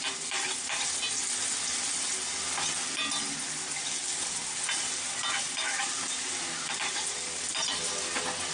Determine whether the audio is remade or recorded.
recorded